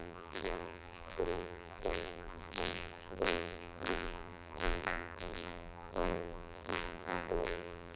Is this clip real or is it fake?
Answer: fake